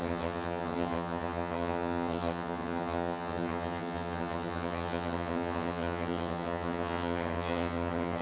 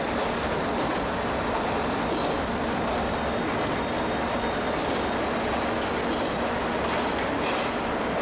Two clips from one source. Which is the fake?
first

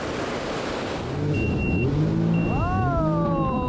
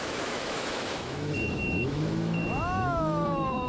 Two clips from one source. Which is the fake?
second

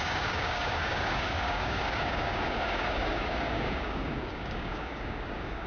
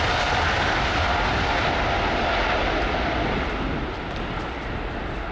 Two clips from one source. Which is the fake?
first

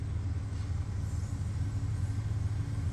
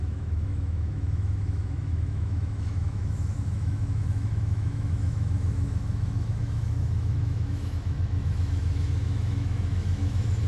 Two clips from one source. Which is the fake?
second